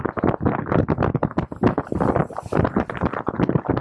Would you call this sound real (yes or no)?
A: yes